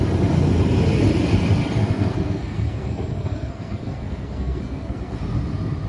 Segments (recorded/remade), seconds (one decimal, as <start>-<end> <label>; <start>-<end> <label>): 0.0-1.8 recorded; 1.8-5.2 remade; 5.2-5.9 recorded